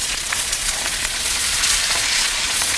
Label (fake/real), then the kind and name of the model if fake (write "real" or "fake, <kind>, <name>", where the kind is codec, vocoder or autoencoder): fake, vocoder, Vocos